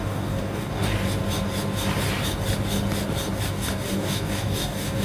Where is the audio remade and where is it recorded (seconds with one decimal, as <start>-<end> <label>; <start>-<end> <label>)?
0.0-0.9 remade; 0.9-3.5 recorded; 3.5-5.0 remade